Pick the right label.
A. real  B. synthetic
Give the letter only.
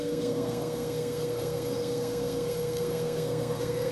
B